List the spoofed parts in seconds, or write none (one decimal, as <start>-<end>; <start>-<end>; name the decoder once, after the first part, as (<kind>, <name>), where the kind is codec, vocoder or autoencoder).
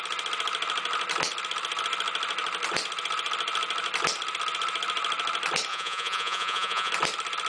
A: 5.7-6.9 (vocoder, Vocos)